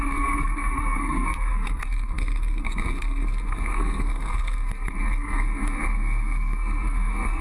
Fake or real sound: fake